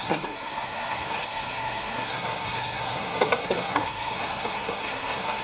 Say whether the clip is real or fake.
fake